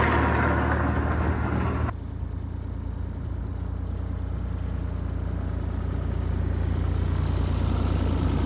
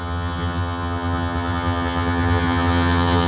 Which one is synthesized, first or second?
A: second